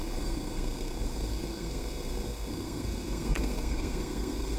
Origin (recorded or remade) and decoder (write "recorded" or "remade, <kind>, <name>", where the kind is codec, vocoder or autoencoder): remade, codec, SNAC